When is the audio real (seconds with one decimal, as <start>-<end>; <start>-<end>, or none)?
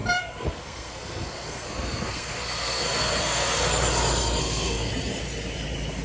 3.6-4.4; 4.9-6.0